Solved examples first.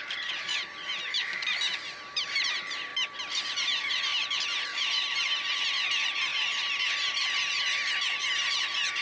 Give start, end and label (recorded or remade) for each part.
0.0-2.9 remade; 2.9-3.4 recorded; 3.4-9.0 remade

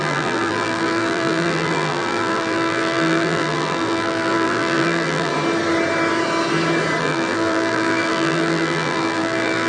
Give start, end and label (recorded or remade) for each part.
0.0-5.3 remade; 5.3-7.0 recorded; 7.0-9.7 remade

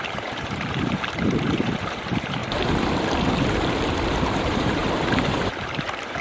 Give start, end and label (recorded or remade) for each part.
0.0-2.4 remade; 2.4-4.1 recorded; 4.1-4.8 remade; 4.8-5.3 recorded; 5.3-6.2 remade